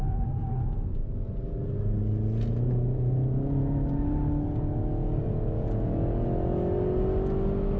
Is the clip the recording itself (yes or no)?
yes